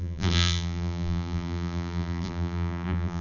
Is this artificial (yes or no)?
yes